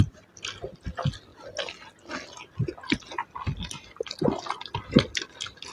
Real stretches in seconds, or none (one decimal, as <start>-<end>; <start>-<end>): 0.0-5.7